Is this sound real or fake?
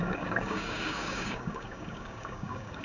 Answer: fake